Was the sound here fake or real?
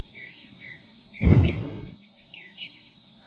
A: fake